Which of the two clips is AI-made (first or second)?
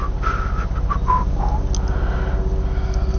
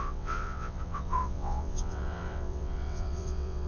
second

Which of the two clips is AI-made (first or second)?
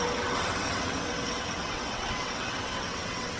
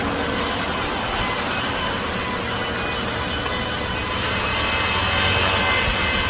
first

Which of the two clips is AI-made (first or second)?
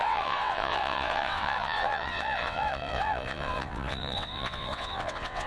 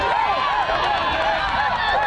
first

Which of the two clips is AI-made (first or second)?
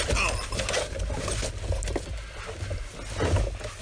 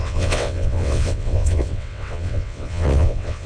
second